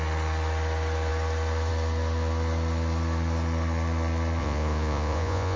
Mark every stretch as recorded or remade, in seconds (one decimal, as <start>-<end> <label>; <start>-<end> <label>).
0.0-4.4 recorded; 4.4-5.6 remade

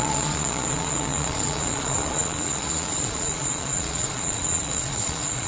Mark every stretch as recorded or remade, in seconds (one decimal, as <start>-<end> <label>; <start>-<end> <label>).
0.0-5.5 remade